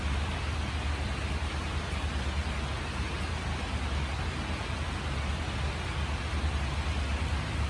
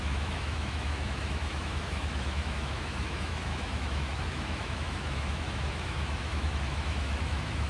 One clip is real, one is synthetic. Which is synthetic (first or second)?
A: second